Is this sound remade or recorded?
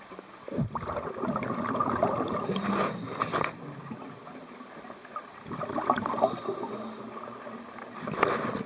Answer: recorded